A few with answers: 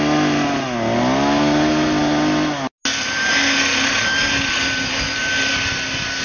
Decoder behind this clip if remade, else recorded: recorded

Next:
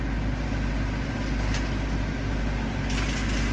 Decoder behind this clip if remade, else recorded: recorded